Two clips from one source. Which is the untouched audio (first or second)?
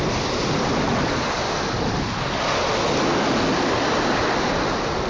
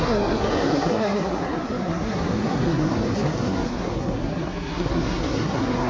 first